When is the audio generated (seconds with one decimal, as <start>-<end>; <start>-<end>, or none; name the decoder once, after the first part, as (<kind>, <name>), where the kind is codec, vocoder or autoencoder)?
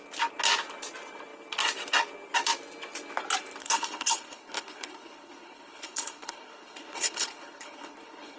3.6-8.4 (codec, HILCodec)